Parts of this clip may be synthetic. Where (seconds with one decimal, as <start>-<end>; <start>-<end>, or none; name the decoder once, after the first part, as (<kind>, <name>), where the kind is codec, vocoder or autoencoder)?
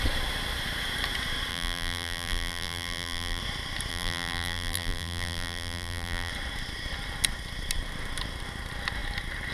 1.5-3.4 (vocoder, BigVGAN v2); 3.9-6.3